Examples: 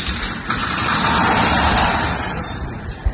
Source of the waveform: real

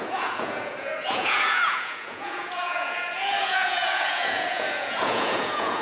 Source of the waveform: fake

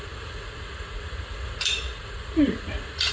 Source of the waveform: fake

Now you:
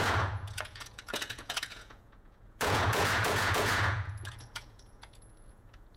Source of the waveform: fake